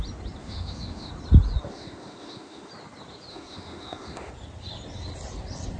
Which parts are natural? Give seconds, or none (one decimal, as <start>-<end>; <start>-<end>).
0.0-0.4; 1.1-1.7; 2.7-3.3; 4.3-5.8